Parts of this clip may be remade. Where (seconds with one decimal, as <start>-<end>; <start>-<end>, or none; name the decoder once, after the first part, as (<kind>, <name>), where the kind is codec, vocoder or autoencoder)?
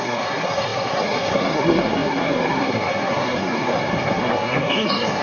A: 0.0-5.2 (codec, SNAC)